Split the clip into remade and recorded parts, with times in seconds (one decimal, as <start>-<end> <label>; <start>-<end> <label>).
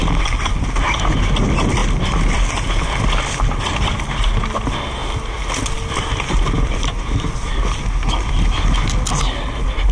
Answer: 0.0-9.9 recorded